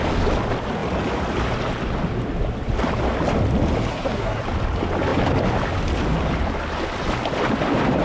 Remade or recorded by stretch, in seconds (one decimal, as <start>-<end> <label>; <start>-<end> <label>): 0.0-3.9 recorded; 3.9-4.4 remade; 4.4-8.0 recorded